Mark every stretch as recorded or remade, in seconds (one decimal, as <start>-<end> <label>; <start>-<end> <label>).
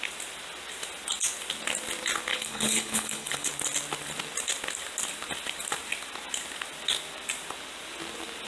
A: 0.0-2.3 recorded; 2.3-3.5 remade; 3.5-8.5 recorded